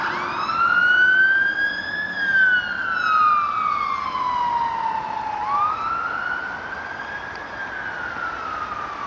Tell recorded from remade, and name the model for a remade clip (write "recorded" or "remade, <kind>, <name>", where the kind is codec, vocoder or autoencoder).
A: recorded